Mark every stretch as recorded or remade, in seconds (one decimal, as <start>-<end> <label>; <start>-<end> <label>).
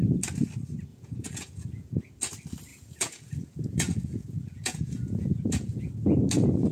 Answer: 0.0-0.9 recorded; 0.9-2.1 remade; 2.1-2.7 recorded; 2.7-5.9 remade; 5.9-6.7 recorded